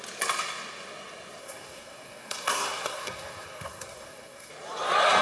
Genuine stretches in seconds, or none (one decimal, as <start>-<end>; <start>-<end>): 0.0-1.4; 4.5-5.2